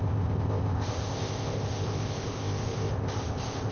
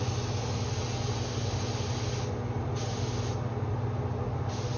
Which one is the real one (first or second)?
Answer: second